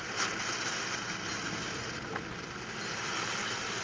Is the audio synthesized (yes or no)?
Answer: no